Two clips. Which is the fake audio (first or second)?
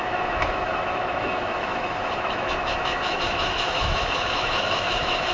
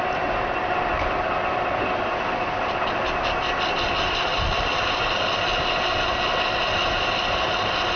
first